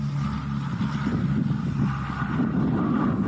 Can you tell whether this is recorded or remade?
recorded